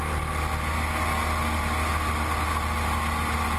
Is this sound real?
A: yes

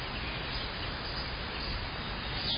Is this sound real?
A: yes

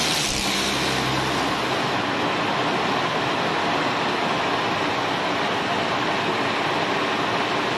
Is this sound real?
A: yes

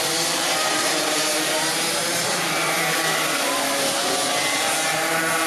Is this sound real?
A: no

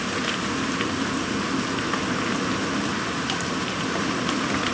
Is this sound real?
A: yes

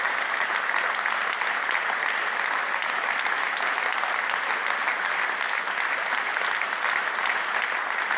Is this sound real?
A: yes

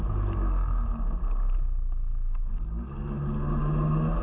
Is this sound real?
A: yes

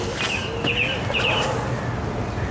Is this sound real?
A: yes